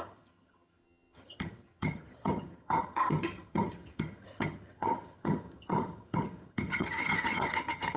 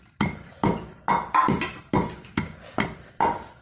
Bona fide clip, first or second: second